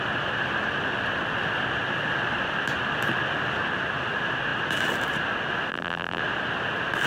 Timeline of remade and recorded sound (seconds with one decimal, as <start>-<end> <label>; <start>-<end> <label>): 0.0-5.7 recorded; 5.7-6.2 remade; 6.2-7.1 recorded